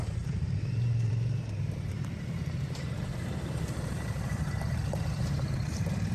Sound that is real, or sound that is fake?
fake